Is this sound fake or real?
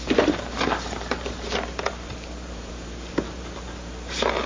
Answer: fake